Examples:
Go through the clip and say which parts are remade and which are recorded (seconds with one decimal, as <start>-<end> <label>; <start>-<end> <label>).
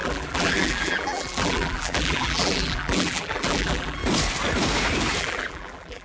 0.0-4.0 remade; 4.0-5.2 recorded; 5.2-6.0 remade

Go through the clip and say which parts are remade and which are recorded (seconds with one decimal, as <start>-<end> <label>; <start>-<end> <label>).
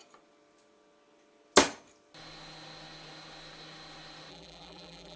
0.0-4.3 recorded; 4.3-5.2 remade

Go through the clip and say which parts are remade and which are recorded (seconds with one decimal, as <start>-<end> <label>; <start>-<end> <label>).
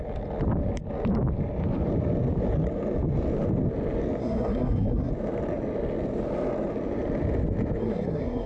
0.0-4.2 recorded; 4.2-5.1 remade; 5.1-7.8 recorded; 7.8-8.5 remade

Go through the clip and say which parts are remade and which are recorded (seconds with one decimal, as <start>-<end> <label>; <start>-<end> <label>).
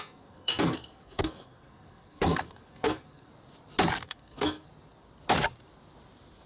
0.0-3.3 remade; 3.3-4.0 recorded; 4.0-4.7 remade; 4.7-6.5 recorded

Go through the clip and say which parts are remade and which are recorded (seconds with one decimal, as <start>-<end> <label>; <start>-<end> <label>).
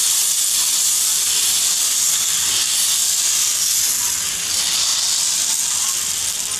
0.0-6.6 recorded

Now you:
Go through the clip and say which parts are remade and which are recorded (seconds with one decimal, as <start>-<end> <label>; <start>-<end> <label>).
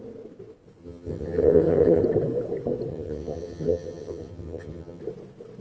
0.0-0.8 recorded; 0.8-2.0 remade; 2.0-2.9 recorded; 2.9-5.0 remade; 5.0-5.6 recorded